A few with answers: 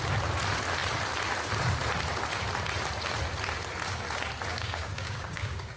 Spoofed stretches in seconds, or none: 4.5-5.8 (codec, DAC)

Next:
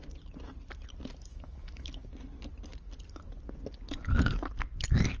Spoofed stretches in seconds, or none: 1.3-2.1 (autoencoder, DAC-VAE)

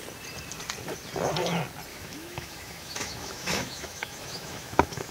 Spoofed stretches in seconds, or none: 1.9-5.1 (autoencoder, DAC-VAE)

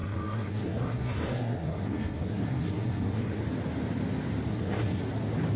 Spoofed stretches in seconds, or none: 0.0-3.4 (codec, SNAC); 4.5-5.0

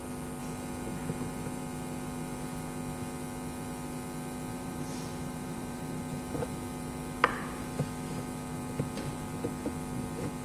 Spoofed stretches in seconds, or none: 4.5-6.0 (vocoder, BigVGAN v2)

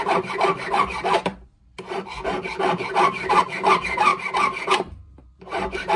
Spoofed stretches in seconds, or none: 0.0-4.1 (vocoder, BigVGAN v2); 4.7-6.0

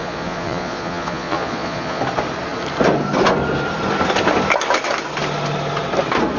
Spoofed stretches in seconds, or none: 0.0-2.0 (vocoder, Vocos)